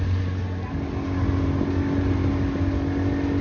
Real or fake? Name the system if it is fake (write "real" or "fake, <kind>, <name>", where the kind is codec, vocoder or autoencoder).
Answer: real